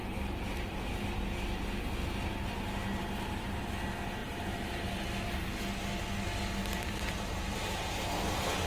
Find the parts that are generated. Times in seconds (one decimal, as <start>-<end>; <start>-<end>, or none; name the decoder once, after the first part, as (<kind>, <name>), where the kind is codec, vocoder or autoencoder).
0.0-0.9 (vocoder, BigVGAN v2); 4.2-4.9; 6.6-8.0